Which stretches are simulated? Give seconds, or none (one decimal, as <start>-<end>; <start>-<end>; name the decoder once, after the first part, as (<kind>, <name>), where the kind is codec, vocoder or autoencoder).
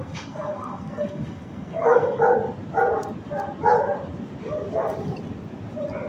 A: 0.0-2.2 (codec, SNAC)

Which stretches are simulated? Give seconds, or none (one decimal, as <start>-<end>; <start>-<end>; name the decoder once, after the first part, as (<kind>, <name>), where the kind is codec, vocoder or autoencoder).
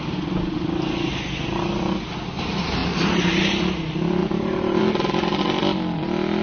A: 2.8-3.4 (vocoder, BigVGAN v2); 4.2-4.8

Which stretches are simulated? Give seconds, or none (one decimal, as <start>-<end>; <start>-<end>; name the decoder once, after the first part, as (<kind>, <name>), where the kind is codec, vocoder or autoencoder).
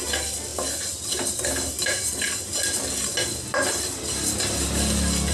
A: none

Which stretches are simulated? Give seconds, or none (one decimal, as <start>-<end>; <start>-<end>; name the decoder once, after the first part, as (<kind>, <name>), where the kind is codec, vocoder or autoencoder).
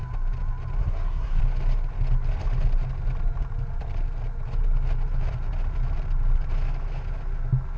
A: 0.8-1.4 (codec, SNAC)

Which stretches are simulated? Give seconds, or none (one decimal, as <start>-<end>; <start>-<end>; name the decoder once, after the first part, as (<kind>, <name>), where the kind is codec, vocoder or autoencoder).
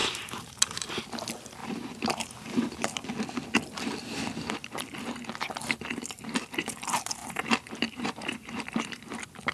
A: 0.0-0.9 (vocoder, BigVGAN v2); 1.6-2.8; 7.2-9.0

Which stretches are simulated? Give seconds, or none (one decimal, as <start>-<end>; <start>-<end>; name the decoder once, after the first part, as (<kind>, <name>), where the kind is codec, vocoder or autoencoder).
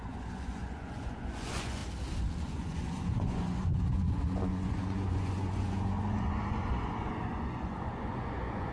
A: 0.0-1.8 (vocoder, Vocos); 2.4-8.7